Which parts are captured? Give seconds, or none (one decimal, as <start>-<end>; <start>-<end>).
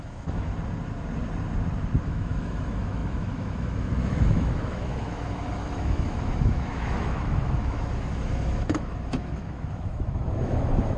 0.5-2.0